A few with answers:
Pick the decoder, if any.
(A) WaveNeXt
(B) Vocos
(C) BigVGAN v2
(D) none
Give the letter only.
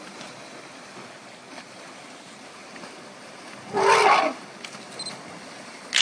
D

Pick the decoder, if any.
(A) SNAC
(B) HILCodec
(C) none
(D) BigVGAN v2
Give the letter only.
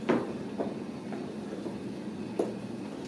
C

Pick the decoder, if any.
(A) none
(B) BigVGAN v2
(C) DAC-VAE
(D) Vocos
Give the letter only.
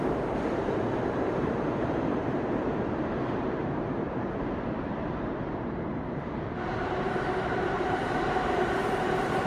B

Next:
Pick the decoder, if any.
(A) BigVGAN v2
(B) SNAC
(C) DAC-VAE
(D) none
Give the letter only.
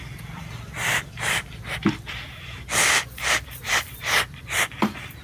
A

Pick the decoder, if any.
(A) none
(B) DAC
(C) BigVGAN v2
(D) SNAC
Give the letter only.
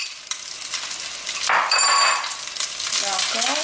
A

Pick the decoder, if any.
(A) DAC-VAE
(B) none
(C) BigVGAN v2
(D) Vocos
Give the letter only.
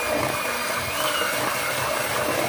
B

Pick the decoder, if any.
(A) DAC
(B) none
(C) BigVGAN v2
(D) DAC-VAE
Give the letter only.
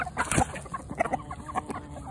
B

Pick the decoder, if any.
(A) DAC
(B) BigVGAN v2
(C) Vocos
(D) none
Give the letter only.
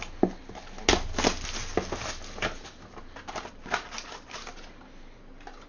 D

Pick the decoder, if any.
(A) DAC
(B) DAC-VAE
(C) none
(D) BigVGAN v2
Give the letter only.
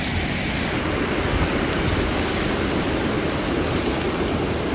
C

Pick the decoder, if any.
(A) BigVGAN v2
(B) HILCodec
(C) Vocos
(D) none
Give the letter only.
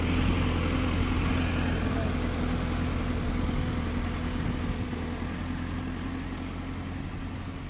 D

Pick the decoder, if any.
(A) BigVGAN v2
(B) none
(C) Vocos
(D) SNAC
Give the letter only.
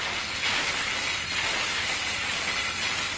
B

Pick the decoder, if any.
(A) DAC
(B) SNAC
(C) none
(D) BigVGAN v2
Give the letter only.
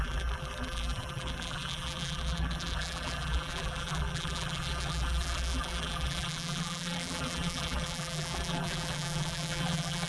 D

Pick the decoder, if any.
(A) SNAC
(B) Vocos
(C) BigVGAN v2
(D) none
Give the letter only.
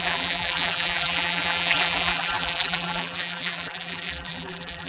C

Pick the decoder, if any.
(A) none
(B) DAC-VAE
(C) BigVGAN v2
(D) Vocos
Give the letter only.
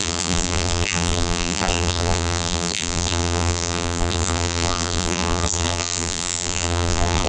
C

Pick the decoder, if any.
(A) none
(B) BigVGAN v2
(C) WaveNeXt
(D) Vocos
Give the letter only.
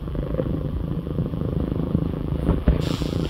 B